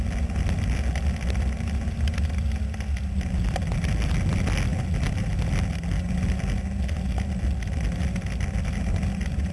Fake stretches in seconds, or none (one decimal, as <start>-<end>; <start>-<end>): none